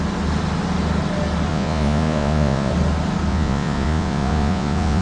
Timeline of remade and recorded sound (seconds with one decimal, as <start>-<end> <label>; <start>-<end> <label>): 0.0-1.5 recorded; 1.5-2.7 remade; 2.7-3.3 recorded; 3.3-5.0 remade